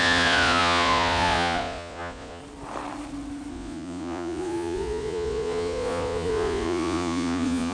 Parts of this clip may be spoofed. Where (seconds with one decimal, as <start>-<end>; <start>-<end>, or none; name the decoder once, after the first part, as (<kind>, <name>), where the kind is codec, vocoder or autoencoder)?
0.0-2.4 (vocoder, Vocos); 3.5-7.7